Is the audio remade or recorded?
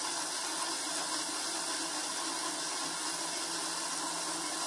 recorded